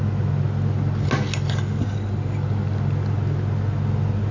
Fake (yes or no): no